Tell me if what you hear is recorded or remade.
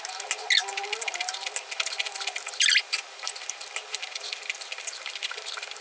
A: recorded